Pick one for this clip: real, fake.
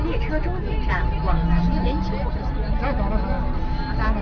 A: real